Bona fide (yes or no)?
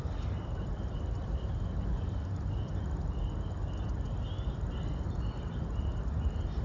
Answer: yes